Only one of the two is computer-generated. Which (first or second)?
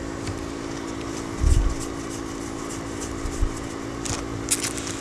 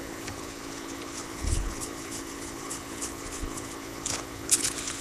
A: second